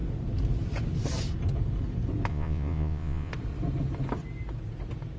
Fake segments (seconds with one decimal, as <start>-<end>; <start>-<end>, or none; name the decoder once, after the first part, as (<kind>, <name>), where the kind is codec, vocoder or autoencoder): 2.3-3.3 (vocoder, Vocos)